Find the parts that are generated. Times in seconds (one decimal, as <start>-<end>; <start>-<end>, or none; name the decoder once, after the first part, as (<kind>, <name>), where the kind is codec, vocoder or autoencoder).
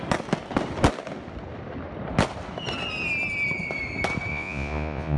4.3-5.2 (vocoder, Vocos)